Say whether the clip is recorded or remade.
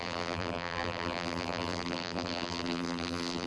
remade